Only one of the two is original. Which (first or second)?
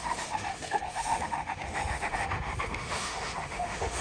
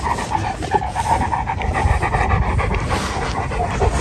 second